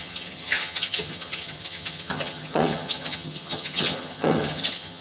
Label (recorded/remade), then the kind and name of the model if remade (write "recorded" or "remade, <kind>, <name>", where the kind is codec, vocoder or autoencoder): remade, vocoder, HiFi-GAN